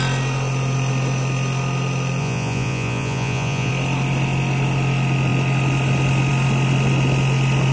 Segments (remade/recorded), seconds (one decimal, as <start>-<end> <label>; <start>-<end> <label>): 0.0-2.2 recorded; 2.2-3.7 remade; 3.7-7.7 recorded